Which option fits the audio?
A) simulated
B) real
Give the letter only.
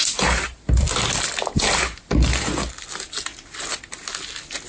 B